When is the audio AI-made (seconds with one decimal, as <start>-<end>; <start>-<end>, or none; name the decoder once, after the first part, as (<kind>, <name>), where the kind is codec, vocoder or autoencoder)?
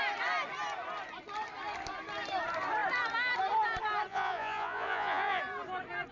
4.1-5.4 (vocoder, Vocos)